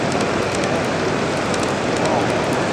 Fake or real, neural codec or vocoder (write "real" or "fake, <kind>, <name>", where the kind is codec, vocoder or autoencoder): real